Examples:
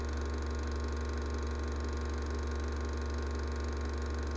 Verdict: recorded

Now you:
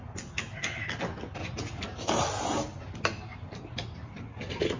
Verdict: recorded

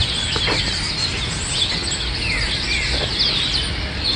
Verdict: recorded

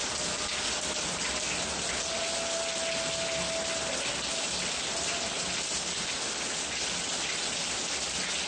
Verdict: recorded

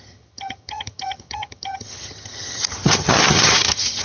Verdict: remade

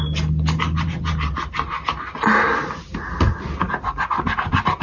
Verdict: recorded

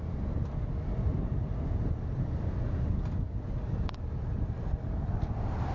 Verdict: recorded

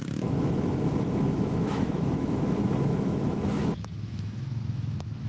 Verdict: remade